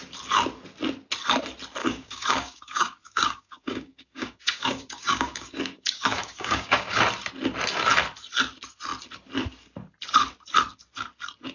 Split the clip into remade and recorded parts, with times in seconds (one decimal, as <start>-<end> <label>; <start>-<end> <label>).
0.0-1.8 recorded; 1.8-7.0 remade; 7.0-11.5 recorded